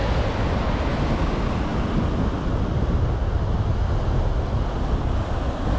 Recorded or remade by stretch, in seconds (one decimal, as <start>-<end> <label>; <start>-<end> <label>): 0.0-5.8 recorded